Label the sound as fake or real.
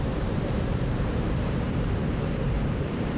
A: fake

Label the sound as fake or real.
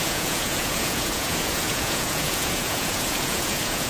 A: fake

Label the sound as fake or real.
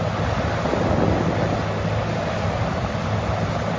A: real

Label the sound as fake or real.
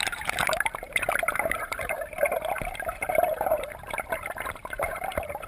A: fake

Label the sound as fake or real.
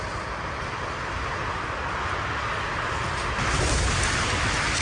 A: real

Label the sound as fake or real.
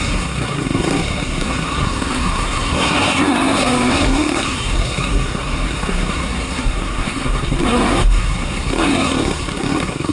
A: fake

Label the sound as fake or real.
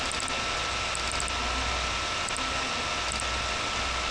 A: real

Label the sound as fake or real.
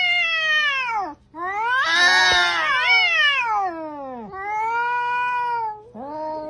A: real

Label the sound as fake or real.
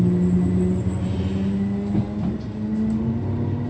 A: real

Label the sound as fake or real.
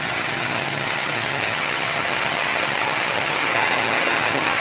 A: fake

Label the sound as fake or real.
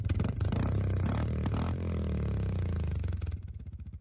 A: real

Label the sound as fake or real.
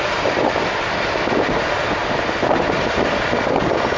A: fake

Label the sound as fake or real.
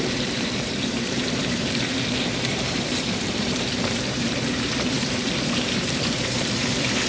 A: fake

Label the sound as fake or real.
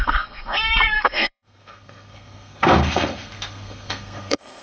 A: fake